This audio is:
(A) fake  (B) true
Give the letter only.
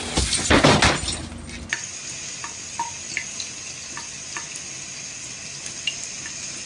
B